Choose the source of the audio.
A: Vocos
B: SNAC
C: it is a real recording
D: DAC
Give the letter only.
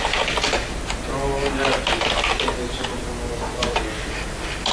C